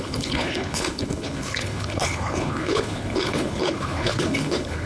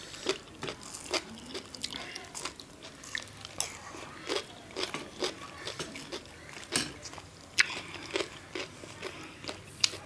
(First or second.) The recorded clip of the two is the second